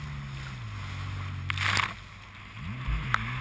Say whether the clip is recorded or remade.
recorded